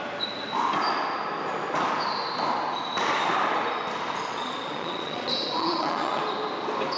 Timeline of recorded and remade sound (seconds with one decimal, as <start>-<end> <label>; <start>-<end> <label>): 0.0-4.3 recorded; 4.3-6.2 remade; 6.2-7.0 recorded